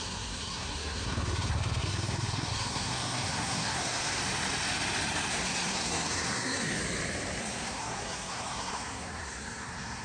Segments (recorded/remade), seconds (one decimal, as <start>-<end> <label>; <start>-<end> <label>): 0.0-4.2 remade; 4.2-5.3 recorded; 5.3-6.8 remade; 6.8-7.4 recorded; 7.4-10.0 remade